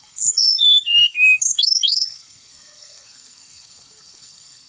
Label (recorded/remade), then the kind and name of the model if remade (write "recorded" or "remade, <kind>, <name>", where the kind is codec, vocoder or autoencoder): remade, codec, SNAC